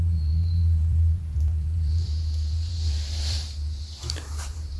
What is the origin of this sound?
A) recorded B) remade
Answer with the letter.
B